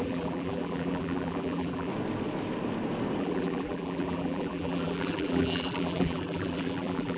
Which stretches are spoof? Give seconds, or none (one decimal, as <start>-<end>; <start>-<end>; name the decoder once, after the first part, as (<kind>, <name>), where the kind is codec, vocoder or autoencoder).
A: 0.0-1.9 (vocoder, BigVGAN v2); 3.2-7.2